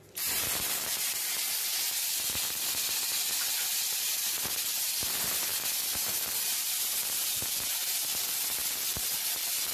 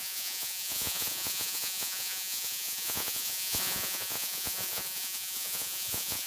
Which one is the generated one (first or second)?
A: second